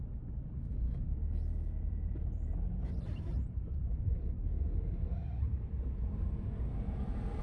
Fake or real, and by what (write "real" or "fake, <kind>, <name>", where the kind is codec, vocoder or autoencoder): fake, vocoder, BigVGAN v2